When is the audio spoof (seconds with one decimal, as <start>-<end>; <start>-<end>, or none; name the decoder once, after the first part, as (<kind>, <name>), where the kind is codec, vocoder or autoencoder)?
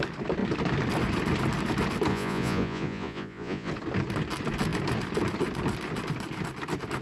2.1-3.7 (vocoder, Vocos)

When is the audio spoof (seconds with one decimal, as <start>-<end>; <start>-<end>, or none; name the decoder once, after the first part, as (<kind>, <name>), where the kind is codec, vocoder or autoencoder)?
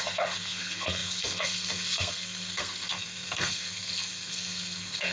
0.0-5.1 (codec, SNAC)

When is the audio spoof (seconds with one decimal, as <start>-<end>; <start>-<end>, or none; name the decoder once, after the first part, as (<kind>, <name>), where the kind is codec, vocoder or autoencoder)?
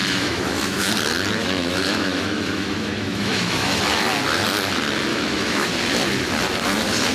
0.0-0.9 (autoencoder, DAC-VAE); 1.4-3.8; 5.1-5.7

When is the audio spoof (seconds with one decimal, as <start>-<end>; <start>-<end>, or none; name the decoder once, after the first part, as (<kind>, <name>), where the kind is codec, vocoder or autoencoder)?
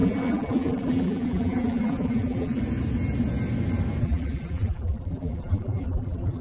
0.0-2.6 (vocoder, BigVGAN v2); 4.0-6.4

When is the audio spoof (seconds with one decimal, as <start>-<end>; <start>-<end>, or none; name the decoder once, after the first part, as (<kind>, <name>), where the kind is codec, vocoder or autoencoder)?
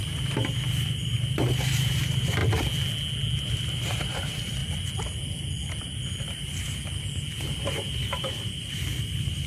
0.0-2.4 (vocoder, BigVGAN v2); 3.4-4.6; 5.8-6.8; 7.4-9.5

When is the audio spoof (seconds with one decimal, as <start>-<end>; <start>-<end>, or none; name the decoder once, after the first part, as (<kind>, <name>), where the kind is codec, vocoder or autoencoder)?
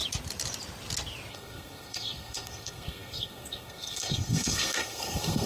1.3-5.5 (codec, SNAC)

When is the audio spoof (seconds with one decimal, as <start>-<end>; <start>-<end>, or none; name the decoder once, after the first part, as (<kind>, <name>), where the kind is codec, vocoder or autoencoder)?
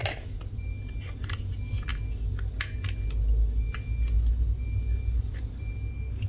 none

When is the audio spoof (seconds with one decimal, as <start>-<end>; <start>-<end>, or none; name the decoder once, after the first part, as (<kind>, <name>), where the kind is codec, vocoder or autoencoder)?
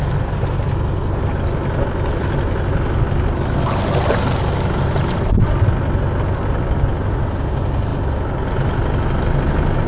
none